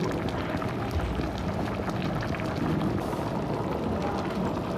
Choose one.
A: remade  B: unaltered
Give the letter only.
B